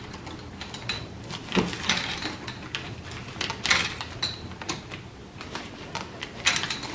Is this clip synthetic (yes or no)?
no